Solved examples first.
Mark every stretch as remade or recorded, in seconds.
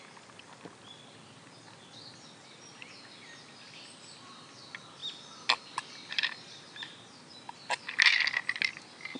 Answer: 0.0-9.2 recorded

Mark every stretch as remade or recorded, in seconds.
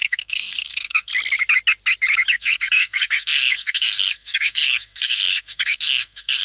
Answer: 0.0-1.1 remade; 1.1-2.3 recorded; 2.3-6.4 remade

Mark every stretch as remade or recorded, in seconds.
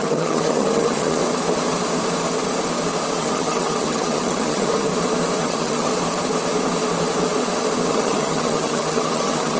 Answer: 0.0-1.2 remade; 1.2-3.2 recorded; 3.2-4.9 remade; 4.9-5.4 recorded; 5.4-5.9 remade; 5.9-7.9 recorded; 7.9-9.6 remade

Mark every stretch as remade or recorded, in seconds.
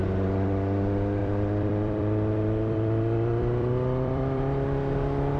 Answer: 0.0-1.2 recorded; 1.2-4.4 remade; 4.4-5.4 recorded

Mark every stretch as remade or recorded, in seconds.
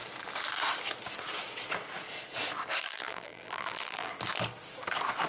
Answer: 0.0-2.8 recorded; 2.8-4.1 remade; 4.1-5.3 recorded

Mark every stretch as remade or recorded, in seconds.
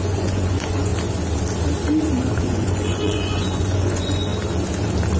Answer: 0.0-0.9 remade; 0.9-2.4 recorded; 2.4-4.3 remade; 4.3-5.2 recorded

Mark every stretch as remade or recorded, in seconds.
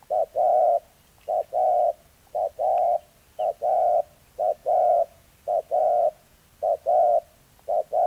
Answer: 0.0-4.6 recorded; 4.6-5.3 remade; 5.3-5.8 recorded; 5.8-6.4 remade; 6.4-8.1 recorded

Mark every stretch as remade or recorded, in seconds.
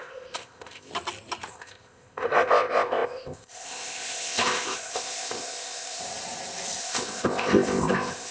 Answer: 0.0-0.9 remade; 0.9-1.5 recorded; 1.5-6.0 remade; 6.0-6.8 recorded; 6.8-8.3 remade